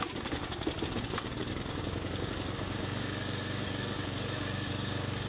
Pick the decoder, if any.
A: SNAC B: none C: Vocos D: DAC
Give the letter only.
D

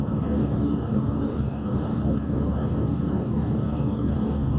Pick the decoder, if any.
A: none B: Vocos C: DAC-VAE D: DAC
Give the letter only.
D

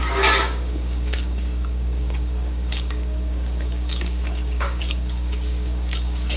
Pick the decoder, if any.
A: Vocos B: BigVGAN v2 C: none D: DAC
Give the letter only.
D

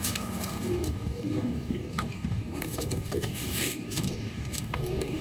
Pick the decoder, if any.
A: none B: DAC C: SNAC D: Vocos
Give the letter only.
B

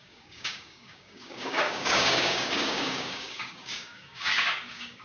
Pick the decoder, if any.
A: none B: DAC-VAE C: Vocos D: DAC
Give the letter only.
D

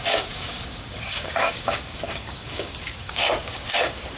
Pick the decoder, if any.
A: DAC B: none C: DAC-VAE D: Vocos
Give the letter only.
A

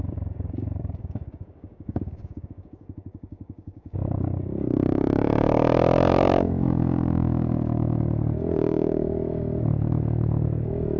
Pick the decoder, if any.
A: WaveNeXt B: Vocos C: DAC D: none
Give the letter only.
C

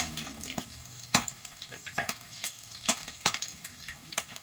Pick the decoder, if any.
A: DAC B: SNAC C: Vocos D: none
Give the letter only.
A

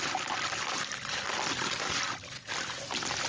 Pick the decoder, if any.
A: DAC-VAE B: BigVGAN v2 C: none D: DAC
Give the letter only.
C